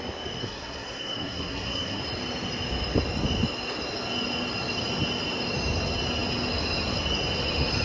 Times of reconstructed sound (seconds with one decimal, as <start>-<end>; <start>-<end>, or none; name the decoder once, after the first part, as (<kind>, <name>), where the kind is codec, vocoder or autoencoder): 0.4-2.0 (codec, SNAC)